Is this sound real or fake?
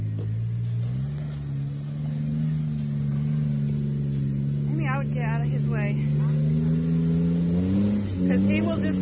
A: real